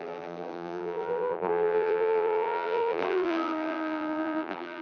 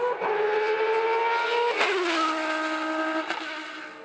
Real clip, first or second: second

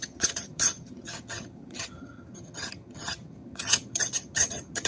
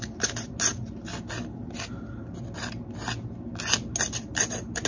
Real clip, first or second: second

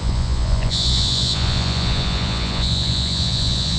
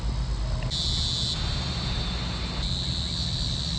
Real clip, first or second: second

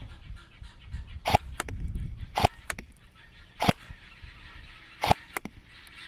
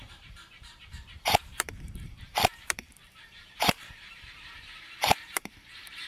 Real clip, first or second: first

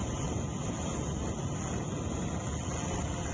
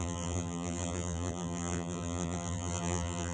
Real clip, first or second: first